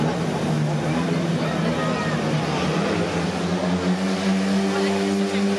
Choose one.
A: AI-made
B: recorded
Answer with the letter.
B